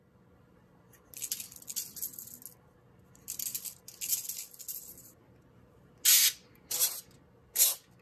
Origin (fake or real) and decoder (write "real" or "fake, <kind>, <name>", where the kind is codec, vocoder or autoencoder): real